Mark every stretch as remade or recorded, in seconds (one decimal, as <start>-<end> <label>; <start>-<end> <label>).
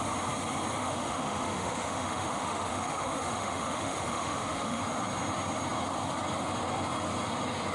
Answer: 0.0-0.8 recorded; 0.8-4.8 remade; 4.8-7.7 recorded